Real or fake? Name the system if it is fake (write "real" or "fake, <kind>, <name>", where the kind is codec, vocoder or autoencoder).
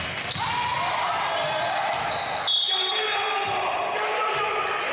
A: real